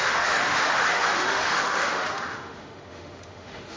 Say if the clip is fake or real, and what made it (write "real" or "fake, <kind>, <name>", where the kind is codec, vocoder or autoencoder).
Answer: fake, autoencoder, DAC-VAE